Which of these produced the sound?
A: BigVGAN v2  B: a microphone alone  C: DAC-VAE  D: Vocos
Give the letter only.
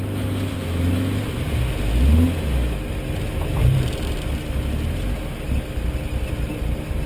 B